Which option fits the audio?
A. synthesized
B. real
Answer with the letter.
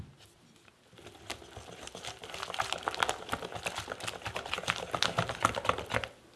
B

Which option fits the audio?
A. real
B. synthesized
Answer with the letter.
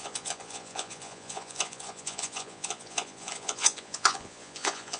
B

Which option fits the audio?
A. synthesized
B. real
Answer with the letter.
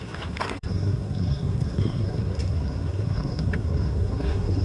A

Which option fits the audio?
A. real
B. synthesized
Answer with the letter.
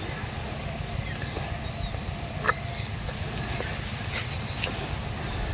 A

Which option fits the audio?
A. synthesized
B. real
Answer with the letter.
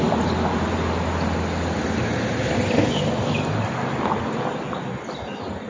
B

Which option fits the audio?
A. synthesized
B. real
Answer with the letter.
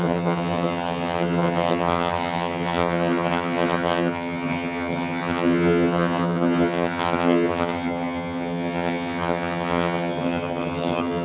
A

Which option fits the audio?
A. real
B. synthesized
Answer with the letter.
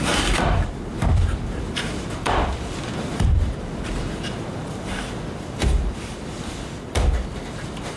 B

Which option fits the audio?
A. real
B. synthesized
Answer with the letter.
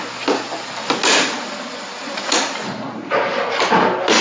A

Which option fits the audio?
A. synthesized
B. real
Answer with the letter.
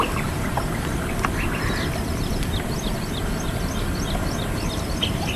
B